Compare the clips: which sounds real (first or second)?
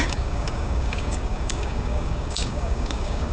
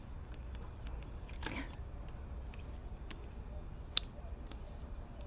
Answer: second